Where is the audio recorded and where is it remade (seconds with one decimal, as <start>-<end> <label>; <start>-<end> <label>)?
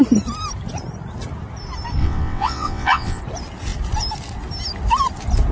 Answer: 0.0-2.0 recorded; 2.0-3.2 remade; 3.2-5.5 recorded